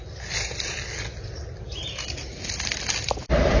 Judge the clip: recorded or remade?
recorded